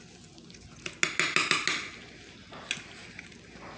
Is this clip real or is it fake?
real